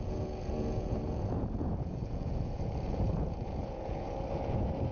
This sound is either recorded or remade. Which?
remade